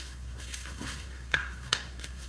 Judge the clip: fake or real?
fake